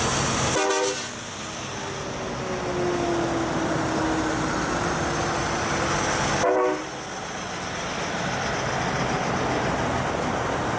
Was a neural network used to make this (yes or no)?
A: no